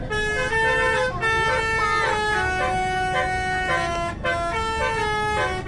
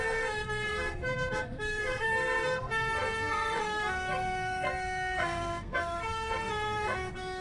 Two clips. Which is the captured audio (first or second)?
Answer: first